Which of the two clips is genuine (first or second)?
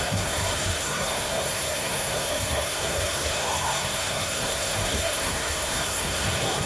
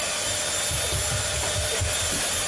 second